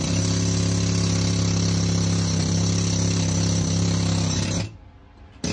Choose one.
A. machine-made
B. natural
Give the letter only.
B